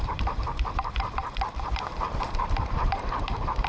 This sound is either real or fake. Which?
fake